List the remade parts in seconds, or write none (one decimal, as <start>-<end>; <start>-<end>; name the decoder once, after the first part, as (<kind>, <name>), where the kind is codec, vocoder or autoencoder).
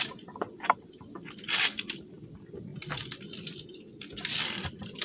0.0-2.7 (vocoder, BigVGAN v2); 4.4-5.0